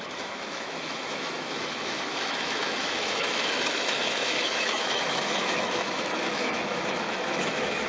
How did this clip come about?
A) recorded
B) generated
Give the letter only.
B